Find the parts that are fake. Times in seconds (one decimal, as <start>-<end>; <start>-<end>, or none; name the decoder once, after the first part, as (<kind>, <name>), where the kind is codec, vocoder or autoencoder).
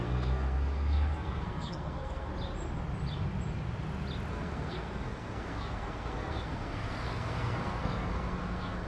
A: 0.0-2.3 (codec, SNAC); 4.3-8.9